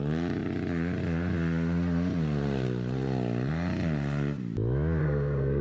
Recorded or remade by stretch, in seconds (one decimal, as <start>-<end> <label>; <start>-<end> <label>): 0.0-5.0 recorded; 5.0-5.6 remade